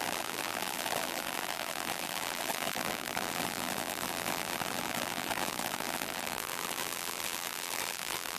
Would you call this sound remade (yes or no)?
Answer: yes